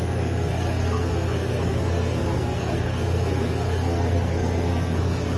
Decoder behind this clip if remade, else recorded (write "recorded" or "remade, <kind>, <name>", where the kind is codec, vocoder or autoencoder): remade, codec, SNAC